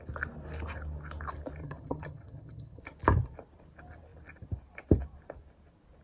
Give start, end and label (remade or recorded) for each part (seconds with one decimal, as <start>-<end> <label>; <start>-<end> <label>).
0.0-1.6 recorded; 1.6-2.8 remade; 2.8-6.0 recorded